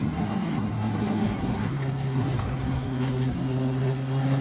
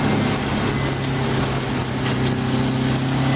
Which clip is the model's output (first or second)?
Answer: first